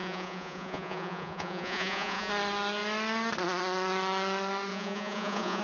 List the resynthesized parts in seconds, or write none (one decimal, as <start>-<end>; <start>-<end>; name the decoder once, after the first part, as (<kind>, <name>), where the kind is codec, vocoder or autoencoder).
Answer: 0.0-2.3 (vocoder, Vocos); 4.7-5.6